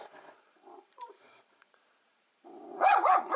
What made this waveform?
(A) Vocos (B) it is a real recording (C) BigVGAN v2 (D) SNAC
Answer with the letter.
A